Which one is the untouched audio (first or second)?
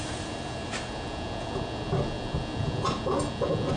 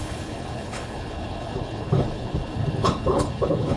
first